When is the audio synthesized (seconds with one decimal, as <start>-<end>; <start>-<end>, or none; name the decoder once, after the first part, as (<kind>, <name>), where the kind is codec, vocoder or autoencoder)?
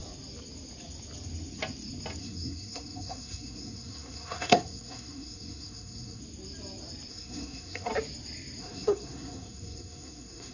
2.2-6.2 (codec, SNAC); 7.1-7.9; 8.6-10.5